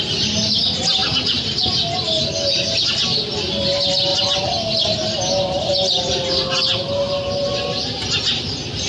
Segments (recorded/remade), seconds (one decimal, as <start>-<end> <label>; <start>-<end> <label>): 0.0-8.9 recorded